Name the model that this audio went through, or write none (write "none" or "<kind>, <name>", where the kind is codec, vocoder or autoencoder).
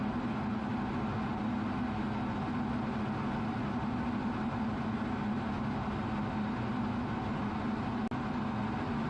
none